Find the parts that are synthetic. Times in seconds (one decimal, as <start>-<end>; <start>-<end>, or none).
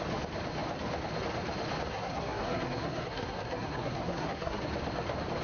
1.9-4.6